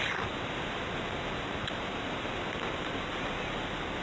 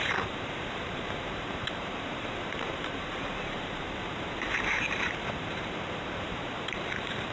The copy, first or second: second